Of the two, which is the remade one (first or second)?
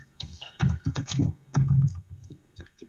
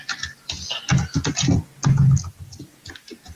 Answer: first